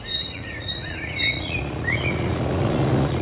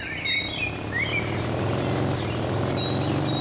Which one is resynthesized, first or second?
first